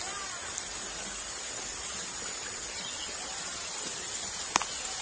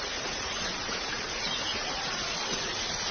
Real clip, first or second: first